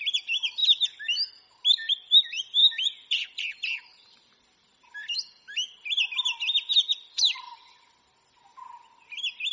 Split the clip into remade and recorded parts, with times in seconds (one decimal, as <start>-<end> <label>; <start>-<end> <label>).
0.0-9.5 recorded